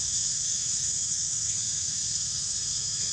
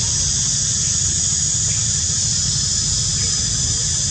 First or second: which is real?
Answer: second